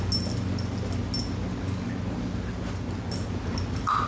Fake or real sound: real